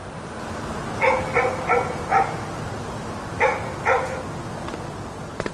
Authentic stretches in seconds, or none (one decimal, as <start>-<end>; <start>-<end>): 0.0-5.5